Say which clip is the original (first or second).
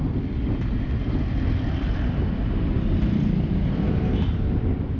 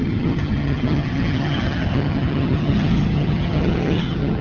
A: first